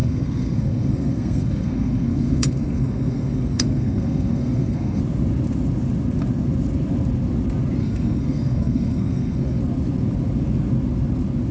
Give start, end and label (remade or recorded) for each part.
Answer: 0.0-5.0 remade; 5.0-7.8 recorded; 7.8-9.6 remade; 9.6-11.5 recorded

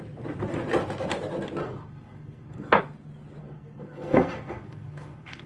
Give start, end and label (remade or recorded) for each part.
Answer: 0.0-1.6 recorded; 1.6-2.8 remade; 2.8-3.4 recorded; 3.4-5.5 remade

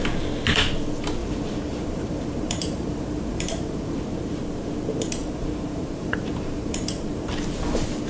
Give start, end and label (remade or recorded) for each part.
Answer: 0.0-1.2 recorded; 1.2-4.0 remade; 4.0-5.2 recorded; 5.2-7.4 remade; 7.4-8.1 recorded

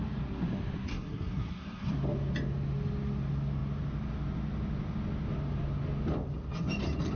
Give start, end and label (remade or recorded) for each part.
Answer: 0.0-0.9 recorded; 0.9-1.9 remade; 1.9-7.2 recorded

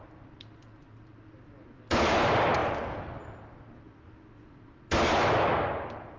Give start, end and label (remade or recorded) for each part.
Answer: 0.0-6.2 recorded